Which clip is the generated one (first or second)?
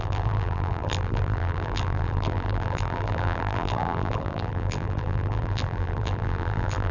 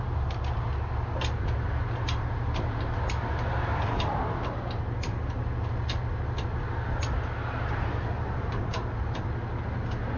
first